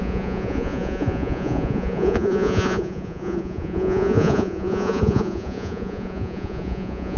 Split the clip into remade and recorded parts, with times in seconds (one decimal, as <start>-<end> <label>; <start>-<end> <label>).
0.0-7.2 remade